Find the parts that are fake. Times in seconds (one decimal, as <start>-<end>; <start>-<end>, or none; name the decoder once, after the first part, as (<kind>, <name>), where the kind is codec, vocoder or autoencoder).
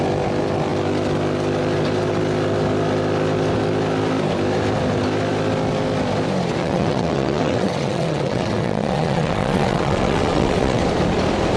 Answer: 6.6-10.8 (vocoder, WaveNeXt)